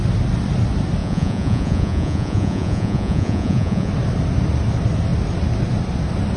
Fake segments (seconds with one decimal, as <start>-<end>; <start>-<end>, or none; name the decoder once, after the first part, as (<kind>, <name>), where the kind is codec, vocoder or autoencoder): 1.0-3.9 (vocoder, Vocos)